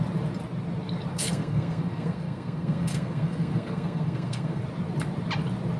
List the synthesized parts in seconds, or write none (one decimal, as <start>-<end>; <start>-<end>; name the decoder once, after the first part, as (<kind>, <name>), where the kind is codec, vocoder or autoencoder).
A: 1.1-4.6 (codec, SNAC)